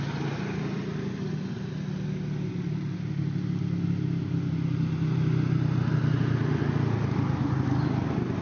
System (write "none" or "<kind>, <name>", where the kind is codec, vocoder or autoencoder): none